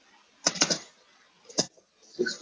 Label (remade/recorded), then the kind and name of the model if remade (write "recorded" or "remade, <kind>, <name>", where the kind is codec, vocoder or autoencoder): recorded